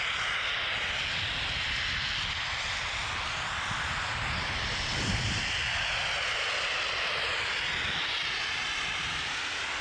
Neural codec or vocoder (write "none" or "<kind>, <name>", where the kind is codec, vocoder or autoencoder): none